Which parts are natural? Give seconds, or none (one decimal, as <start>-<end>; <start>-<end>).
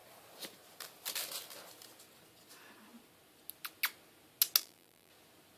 0.0-4.6; 5.1-5.6